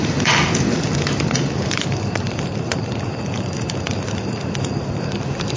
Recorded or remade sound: remade